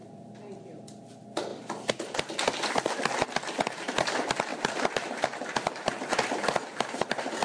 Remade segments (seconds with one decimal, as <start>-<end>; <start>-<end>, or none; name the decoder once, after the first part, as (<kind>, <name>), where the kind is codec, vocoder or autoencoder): 0.0-7.4 (vocoder, BigVGAN v2)